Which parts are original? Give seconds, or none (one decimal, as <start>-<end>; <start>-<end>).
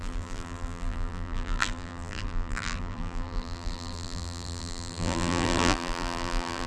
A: none